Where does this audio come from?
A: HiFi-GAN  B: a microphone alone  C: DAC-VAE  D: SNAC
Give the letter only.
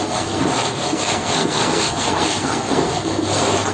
D